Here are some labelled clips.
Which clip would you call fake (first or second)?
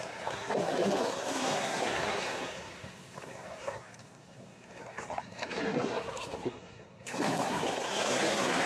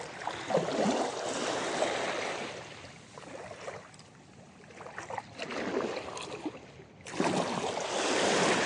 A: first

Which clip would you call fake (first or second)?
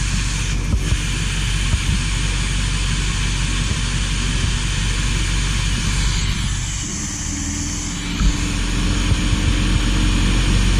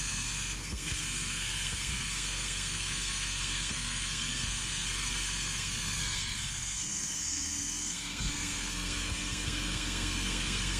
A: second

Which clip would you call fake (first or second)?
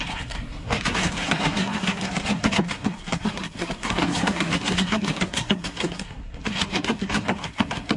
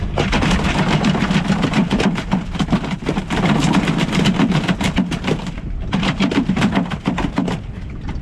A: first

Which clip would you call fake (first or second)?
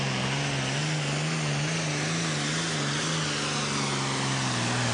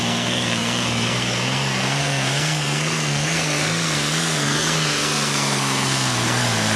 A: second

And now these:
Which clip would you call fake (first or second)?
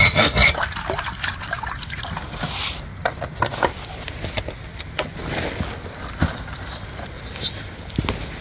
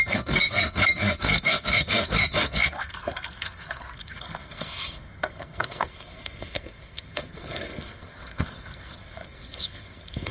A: second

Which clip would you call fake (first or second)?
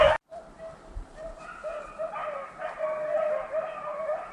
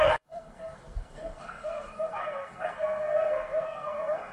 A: second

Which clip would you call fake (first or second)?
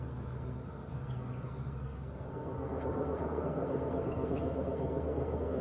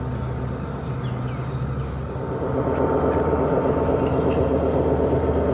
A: first